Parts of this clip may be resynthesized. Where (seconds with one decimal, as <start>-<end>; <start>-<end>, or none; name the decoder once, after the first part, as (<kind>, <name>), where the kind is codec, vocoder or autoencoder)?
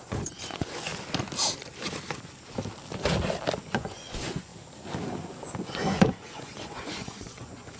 0.0-0.9 (vocoder, Vocos); 3.6-4.5; 5.6-7.8